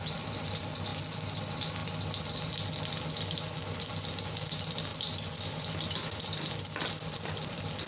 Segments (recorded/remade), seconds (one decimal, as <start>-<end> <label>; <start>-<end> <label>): 0.0-7.9 recorded